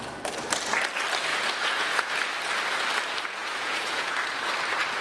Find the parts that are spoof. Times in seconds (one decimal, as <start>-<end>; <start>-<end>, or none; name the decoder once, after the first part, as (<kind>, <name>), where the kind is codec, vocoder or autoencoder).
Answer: 1.3-2.1 (vocoder, Vocos); 3.4-4.1